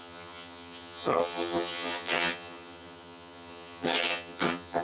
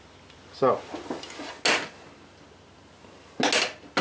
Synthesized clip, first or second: first